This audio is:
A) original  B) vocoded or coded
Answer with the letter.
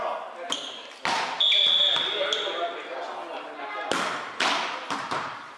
A